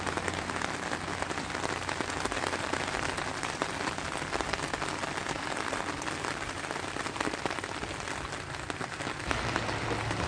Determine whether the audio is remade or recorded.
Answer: recorded